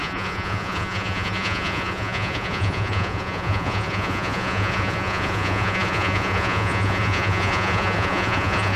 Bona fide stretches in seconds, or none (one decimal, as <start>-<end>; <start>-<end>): none